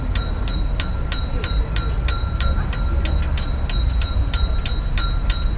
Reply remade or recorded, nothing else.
recorded